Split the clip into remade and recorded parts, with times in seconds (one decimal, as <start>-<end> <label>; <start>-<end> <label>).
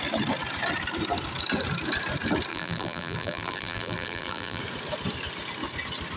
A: 0.0-2.5 recorded; 2.5-4.6 remade; 4.6-6.2 recorded